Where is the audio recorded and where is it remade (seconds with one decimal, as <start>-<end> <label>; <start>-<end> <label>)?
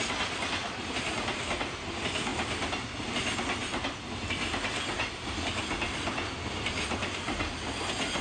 0.0-8.2 recorded